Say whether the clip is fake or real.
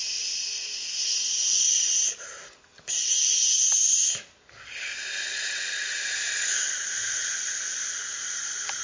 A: real